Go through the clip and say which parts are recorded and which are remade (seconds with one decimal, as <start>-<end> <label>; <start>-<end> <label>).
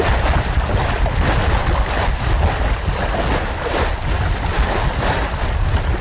0.0-6.0 recorded